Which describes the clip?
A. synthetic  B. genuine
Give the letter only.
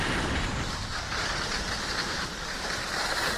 A